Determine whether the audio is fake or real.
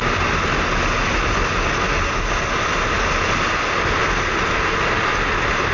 real